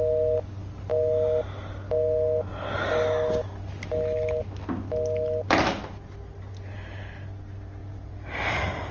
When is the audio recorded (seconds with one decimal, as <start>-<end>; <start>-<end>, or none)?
0.0-7.8